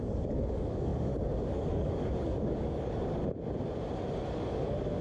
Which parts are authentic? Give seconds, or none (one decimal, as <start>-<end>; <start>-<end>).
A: 3.2-4.3